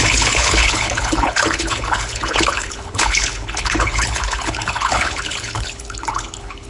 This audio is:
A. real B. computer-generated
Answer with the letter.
B